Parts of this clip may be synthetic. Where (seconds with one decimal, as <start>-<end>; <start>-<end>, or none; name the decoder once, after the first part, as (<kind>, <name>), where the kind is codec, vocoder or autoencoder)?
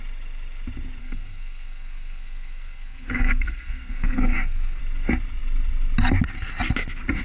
1.0-4.8 (codec, SNAC)